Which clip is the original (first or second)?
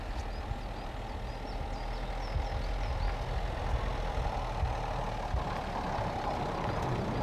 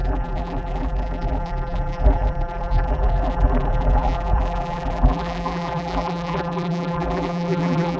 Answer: first